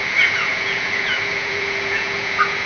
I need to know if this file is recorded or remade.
remade